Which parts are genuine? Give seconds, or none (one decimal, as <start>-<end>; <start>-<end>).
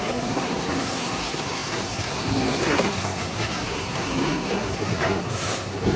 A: none